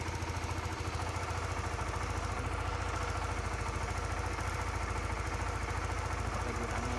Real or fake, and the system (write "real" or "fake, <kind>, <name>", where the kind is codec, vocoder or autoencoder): real